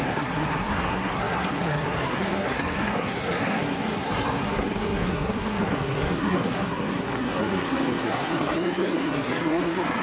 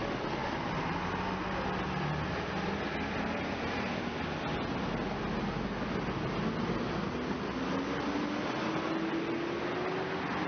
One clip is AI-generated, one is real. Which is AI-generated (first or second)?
first